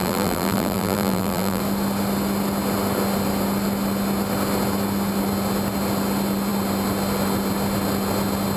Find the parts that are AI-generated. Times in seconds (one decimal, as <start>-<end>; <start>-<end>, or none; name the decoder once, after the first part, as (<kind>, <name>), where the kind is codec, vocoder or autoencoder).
0.0-1.6 (vocoder, BigVGAN v2)